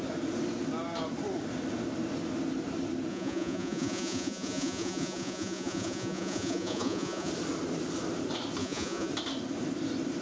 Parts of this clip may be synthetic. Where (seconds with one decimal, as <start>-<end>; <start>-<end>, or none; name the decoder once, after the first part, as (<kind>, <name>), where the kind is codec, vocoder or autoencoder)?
3.1-7.3 (vocoder, Vocos); 8.6-9.1